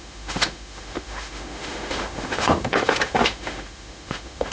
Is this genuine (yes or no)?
no